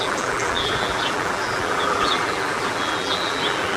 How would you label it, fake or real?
fake